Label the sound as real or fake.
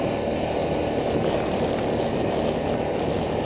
real